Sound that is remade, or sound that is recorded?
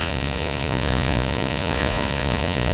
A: remade